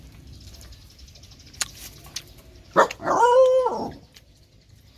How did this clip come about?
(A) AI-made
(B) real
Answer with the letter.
B